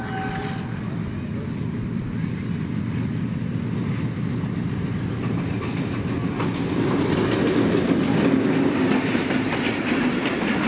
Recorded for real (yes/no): yes